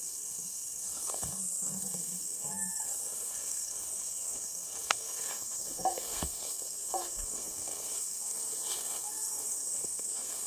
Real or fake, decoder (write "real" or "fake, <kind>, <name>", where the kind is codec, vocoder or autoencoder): fake, codec, SNAC